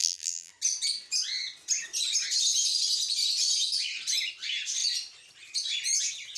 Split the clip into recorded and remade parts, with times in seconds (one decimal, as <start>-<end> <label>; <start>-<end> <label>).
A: 0.0-0.5 remade; 0.5-6.4 recorded